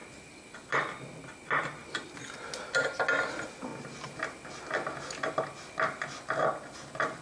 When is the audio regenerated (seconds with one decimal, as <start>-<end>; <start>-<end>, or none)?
none